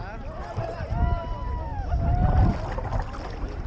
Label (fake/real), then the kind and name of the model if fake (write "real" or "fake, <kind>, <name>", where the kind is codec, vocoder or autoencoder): real